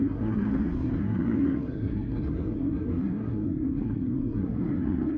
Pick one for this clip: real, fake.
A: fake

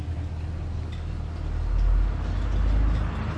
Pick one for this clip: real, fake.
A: real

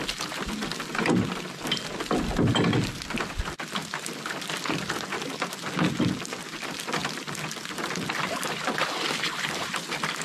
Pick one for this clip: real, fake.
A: real